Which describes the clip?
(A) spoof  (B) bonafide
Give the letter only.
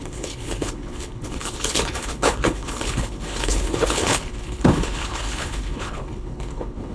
A